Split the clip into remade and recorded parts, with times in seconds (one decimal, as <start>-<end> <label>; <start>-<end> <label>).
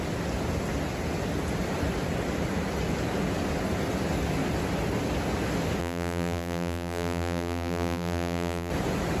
0.0-5.8 recorded; 5.8-8.7 remade; 8.7-9.2 recorded